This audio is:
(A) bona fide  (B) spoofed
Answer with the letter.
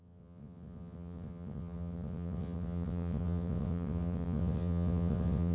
B